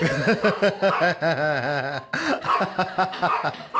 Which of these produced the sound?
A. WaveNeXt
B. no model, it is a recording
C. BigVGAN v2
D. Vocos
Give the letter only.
B